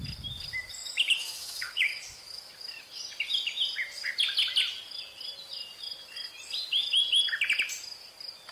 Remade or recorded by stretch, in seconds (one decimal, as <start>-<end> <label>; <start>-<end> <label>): 0.0-0.8 recorded; 0.8-2.5 remade; 2.5-8.5 recorded